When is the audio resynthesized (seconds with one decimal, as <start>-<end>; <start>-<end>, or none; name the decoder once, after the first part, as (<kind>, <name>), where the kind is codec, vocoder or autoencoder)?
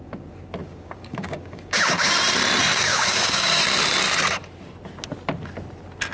0.6-2.0 (codec, DAC); 2.9-3.6